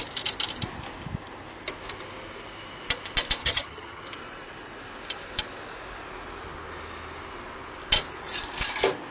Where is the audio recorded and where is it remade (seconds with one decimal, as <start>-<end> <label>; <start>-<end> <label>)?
0.0-3.4 recorded; 3.4-4.0 remade; 4.0-9.1 recorded